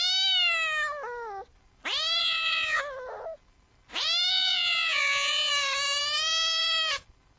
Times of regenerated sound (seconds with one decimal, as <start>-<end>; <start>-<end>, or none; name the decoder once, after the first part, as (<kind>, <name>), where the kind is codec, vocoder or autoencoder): 2.2-2.8 (vocoder, Vocos); 4.3-5.5